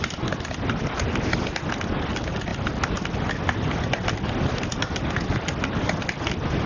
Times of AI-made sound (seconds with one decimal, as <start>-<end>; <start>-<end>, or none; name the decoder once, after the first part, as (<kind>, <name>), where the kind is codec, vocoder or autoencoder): none